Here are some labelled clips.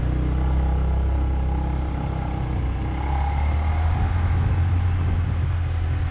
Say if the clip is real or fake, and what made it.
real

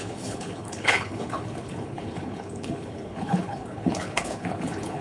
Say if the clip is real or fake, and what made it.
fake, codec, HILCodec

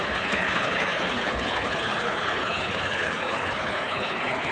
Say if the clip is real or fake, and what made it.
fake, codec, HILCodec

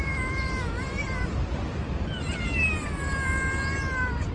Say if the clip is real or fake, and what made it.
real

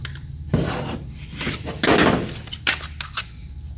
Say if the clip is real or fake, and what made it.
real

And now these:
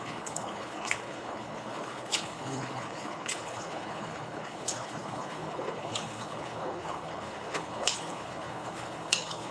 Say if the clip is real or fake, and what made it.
fake, codec, HILCodec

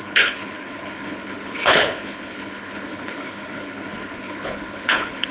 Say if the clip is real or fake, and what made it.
fake, codec, HILCodec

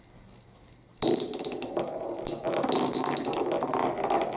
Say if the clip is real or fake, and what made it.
real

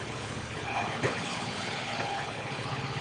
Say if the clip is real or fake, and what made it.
fake, codec, HILCodec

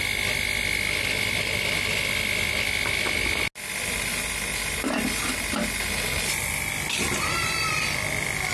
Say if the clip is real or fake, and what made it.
real